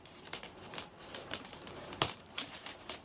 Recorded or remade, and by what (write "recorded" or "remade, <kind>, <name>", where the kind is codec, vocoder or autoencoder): remade, vocoder, BigVGAN v2